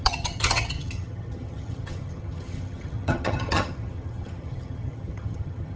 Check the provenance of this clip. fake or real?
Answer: fake